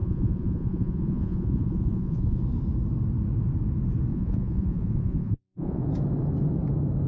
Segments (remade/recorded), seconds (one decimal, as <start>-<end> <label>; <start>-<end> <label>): 0.0-2.4 remade; 2.4-4.1 recorded; 4.1-5.8 remade; 5.8-7.1 recorded